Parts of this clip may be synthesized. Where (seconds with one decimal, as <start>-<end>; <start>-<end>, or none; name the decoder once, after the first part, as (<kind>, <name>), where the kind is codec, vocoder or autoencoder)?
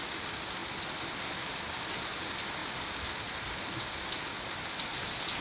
none